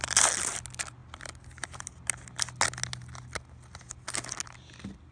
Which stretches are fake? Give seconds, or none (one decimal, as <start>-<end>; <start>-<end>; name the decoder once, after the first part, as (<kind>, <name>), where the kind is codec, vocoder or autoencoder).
none